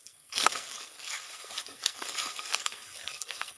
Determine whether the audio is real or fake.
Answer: fake